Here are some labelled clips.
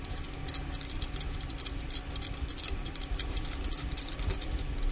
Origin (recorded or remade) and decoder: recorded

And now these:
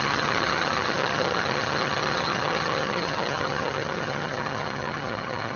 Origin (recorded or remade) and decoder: remade, vocoder, HiFi-GAN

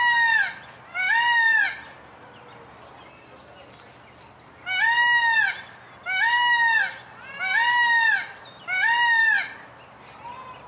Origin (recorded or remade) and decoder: recorded